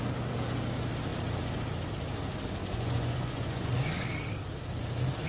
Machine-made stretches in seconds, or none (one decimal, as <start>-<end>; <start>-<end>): 2.6-3.8